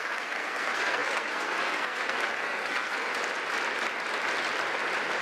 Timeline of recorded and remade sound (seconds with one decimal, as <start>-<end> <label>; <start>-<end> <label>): 0.0-3.1 remade; 3.1-5.2 recorded

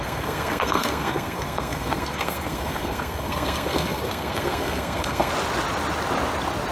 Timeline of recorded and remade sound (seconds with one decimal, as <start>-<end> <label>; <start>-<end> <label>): 0.0-5.3 remade; 5.3-6.7 recorded

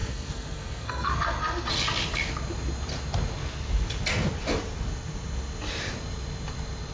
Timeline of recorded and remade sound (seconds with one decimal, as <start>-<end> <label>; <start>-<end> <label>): 0.0-1.7 remade; 1.7-6.9 recorded